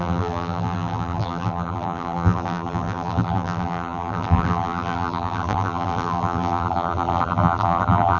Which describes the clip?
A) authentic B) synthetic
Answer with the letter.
B